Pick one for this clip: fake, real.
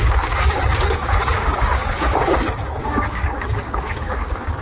fake